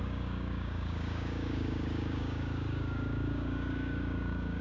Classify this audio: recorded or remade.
remade